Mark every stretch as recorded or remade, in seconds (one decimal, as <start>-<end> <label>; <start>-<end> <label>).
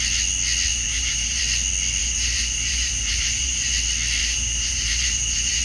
0.0-0.7 recorded; 0.7-1.4 remade; 1.4-2.0 recorded; 2.0-3.7 remade; 3.7-4.2 recorded; 4.2-5.6 remade